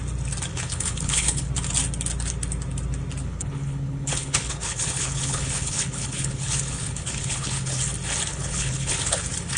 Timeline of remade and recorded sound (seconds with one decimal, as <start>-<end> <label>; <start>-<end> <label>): 0.0-0.5 recorded; 0.5-1.5 remade; 1.5-3.2 recorded; 3.2-7.8 remade; 7.8-8.3 recorded; 8.3-9.2 remade; 9.2-9.6 recorded